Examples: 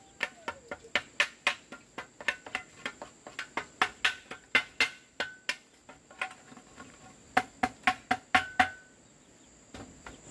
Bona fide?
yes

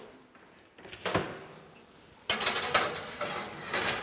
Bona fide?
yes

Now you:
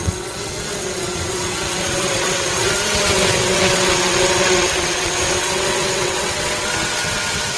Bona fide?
no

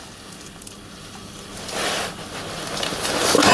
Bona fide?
yes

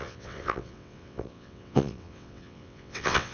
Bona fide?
no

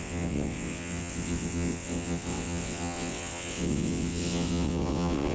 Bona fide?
no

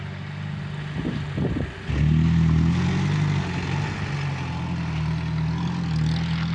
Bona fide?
yes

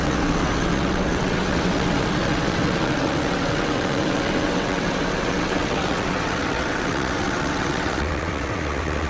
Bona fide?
no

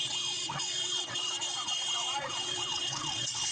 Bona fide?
no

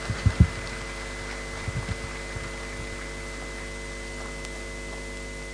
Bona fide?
yes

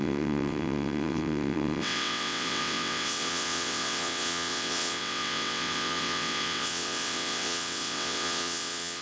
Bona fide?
no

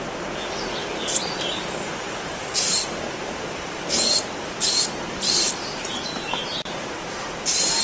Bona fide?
yes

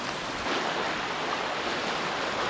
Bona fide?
yes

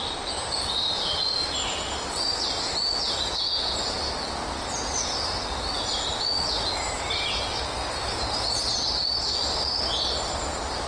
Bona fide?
yes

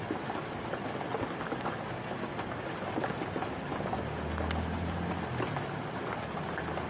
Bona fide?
yes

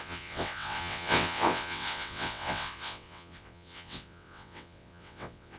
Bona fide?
no